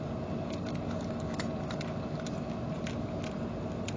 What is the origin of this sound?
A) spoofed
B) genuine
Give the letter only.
B